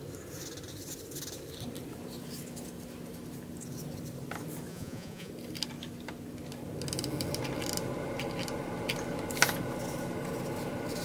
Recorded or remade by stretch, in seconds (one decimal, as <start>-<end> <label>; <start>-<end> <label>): 0.0-4.7 recorded; 4.7-5.3 remade; 5.3-11.0 recorded